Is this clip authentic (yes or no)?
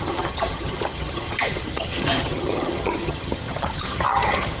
no